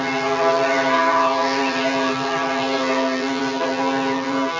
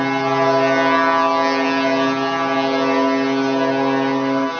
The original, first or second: second